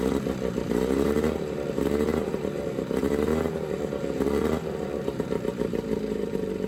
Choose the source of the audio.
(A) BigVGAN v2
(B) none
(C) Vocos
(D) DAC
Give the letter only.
A